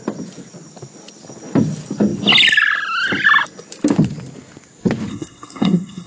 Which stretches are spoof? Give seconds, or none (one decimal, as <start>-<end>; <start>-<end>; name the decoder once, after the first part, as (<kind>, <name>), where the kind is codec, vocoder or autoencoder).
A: 5.1-6.1 (codec, SNAC)